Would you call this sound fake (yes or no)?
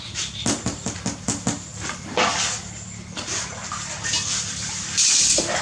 no